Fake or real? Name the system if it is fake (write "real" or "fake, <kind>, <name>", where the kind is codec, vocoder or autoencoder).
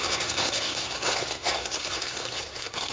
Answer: fake, codec, SNAC